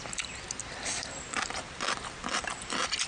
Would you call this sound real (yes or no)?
no